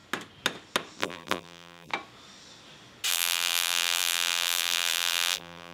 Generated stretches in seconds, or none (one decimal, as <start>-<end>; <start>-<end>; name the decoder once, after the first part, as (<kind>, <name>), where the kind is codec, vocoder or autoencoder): 1.0-1.9 (vocoder, BigVGAN v2); 3.1-5.7